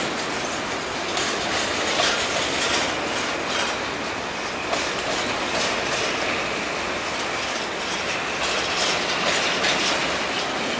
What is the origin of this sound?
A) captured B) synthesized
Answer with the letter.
A